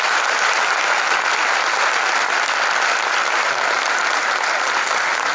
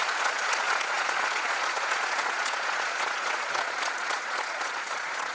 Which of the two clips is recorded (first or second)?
first